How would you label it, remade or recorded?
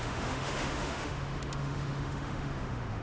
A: remade